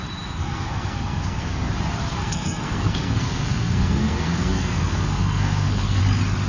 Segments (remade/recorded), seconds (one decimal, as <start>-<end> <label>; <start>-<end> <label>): 0.0-0.4 recorded; 0.4-1.7 remade; 1.7-2.1 recorded; 2.1-6.0 remade; 6.0-6.5 recorded